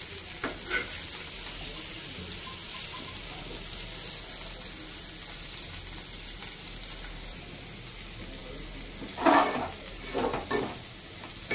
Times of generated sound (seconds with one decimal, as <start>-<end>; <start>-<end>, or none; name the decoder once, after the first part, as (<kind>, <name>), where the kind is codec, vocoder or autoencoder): none